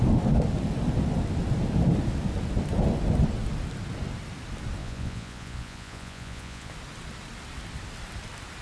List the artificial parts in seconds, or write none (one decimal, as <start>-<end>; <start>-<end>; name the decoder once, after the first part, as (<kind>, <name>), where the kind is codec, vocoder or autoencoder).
4.8-6.7 (vocoder, Vocos)